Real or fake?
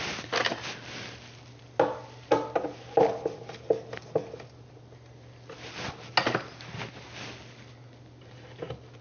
real